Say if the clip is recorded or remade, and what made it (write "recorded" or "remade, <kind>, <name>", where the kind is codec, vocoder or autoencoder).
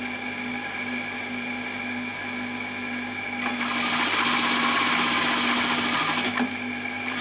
recorded